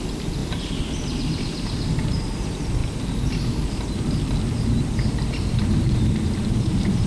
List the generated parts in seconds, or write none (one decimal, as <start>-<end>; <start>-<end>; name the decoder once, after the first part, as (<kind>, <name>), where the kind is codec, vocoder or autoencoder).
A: 0.0-2.8 (vocoder, BigVGAN v2); 6.6-7.1